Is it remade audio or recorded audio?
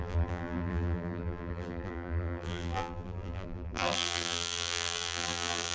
remade